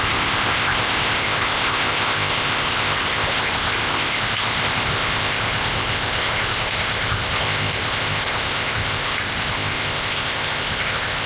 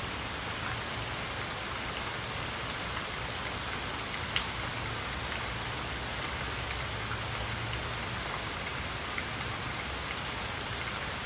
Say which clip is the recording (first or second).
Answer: second